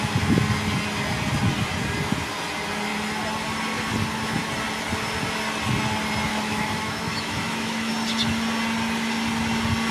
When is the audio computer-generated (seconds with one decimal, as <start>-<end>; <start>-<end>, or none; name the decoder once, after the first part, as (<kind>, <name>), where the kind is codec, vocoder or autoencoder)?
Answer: 6.3-7.9 (autoencoder, DAC-VAE)